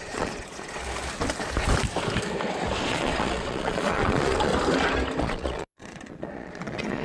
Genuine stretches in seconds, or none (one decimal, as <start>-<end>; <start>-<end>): 0.8-2.9; 4.5-5.2